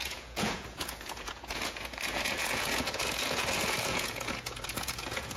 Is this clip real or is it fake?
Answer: fake